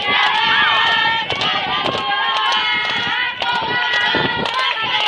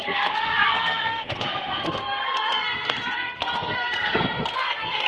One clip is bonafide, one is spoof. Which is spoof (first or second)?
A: second